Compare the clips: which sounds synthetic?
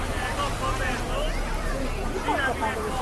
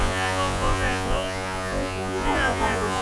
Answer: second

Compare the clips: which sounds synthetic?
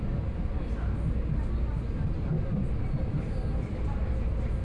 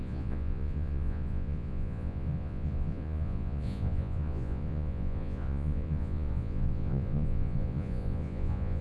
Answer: second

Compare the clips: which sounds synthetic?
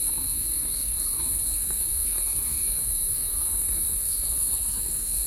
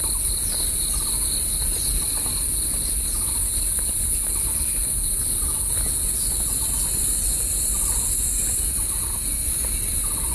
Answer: first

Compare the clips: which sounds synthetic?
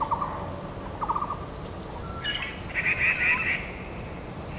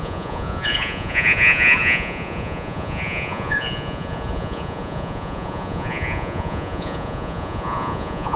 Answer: second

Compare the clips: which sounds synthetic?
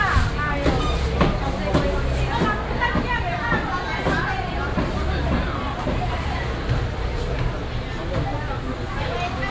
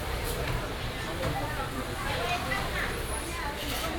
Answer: second